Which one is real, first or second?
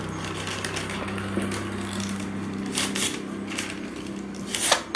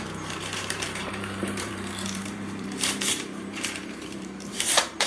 first